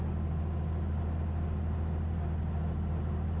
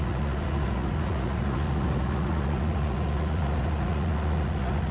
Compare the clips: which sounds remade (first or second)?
second